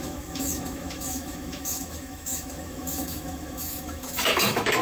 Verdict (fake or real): fake